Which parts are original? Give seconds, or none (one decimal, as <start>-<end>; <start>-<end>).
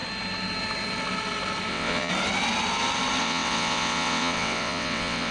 0.0-1.7; 2.1-3.2